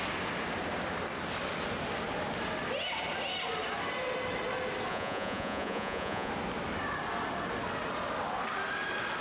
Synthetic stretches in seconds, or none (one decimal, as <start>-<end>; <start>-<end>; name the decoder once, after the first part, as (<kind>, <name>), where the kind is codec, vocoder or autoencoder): 4.9-6.3 (vocoder, Vocos)